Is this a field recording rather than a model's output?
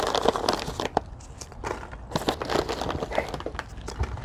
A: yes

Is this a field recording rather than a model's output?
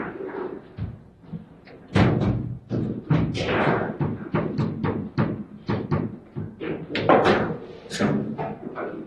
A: no